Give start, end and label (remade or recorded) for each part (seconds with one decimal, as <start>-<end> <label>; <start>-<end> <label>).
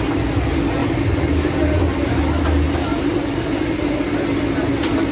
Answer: 0.0-5.1 recorded